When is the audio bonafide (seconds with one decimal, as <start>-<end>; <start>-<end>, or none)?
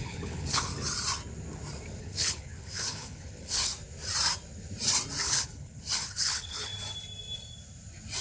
0.7-2.0; 3.7-5.2; 6.7-8.2